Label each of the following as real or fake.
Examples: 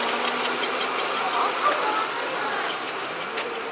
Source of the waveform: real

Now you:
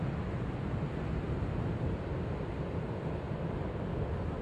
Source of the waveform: real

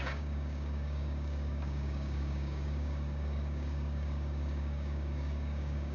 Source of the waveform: fake